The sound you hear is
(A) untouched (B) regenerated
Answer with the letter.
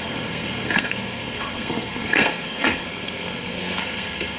B